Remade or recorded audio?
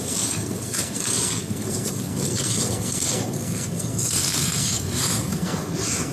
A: remade